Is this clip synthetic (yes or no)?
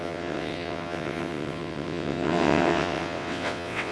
yes